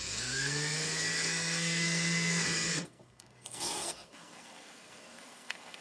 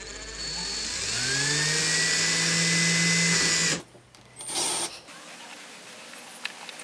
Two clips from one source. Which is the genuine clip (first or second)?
second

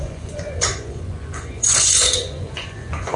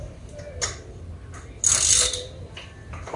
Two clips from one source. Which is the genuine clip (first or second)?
second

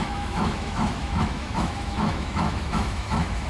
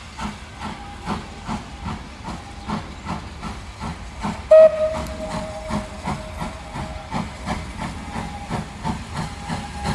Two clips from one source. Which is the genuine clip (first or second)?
second